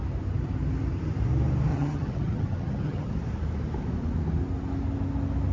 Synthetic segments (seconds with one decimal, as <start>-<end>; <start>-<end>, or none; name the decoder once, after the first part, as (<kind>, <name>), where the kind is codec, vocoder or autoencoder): 1.7-3.1 (vocoder, HiFi-GAN)